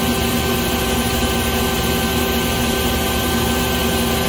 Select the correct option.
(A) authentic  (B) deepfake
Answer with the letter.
A